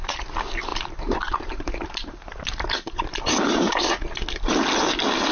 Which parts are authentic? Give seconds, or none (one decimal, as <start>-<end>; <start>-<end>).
0.0-0.7; 3.9-5.3

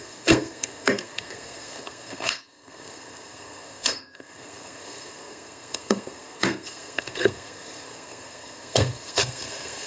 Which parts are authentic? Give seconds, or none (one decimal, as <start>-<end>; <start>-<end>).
none

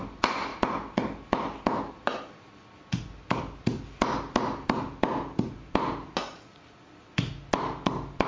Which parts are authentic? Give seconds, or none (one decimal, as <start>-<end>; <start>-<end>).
0.0-8.3